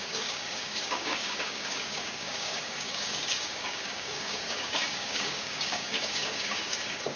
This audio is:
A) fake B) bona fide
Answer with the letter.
A